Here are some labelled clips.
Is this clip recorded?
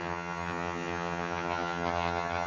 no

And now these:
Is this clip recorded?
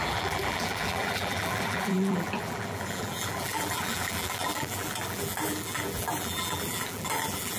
no